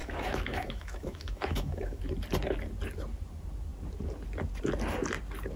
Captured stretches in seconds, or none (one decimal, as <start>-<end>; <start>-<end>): 2.0-5.6